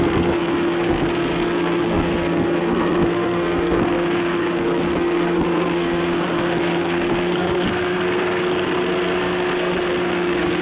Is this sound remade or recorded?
remade